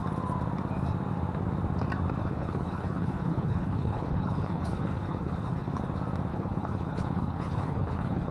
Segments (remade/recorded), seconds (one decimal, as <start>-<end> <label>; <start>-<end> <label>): 0.0-2.2 recorded; 2.2-5.8 remade; 5.8-6.3 recorded; 6.3-8.3 remade